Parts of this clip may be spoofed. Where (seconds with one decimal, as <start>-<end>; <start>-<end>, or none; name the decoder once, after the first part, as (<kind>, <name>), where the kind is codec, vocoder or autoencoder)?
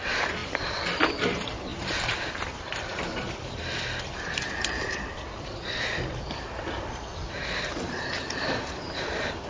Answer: 0.0-9.5 (vocoder, BigVGAN v2)